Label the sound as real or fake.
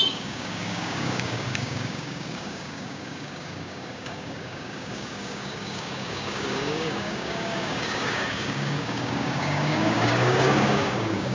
fake